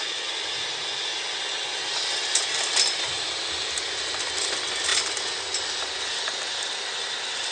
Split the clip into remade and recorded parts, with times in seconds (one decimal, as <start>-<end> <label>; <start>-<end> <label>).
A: 0.0-7.5 recorded